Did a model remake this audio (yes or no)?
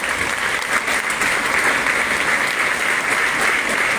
no